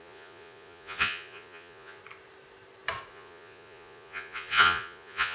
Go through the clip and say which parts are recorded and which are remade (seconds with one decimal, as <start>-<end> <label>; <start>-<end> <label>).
0.0-2.0 remade; 2.0-3.1 recorded; 3.1-5.3 remade